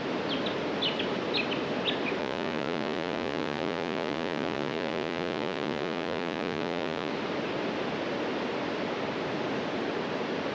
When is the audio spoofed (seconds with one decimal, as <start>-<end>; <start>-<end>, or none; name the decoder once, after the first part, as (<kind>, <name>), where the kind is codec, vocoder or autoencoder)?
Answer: 2.2-7.1 (vocoder, Vocos)